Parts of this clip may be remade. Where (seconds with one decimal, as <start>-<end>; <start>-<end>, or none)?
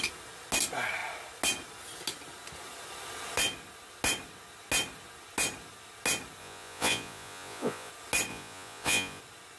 6.4-7.9; 8.3-9.2